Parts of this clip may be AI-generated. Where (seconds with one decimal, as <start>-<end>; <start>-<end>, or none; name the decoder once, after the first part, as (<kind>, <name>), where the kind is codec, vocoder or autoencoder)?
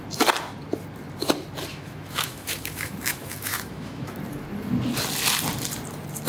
1.7-4.2 (autoencoder, DAC-VAE)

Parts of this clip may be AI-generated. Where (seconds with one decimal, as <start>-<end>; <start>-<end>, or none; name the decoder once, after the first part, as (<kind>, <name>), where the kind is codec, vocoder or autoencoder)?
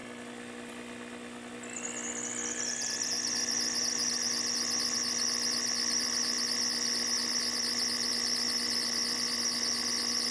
none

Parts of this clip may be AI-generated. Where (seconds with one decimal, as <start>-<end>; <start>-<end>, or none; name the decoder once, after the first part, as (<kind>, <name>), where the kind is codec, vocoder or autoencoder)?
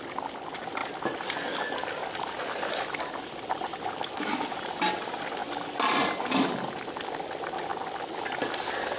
none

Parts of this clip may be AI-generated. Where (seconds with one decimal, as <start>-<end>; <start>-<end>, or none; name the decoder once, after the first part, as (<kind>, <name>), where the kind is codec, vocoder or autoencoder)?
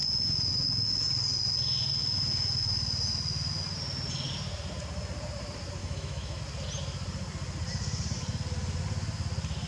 5.8-6.4 (autoencoder, DAC-VAE)